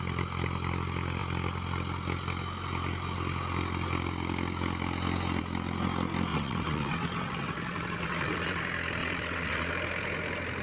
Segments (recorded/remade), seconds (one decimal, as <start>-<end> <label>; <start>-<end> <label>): 0.0-6.3 recorded; 6.3-8.6 remade; 8.6-9.0 recorded; 9.0-9.7 remade; 9.7-10.6 recorded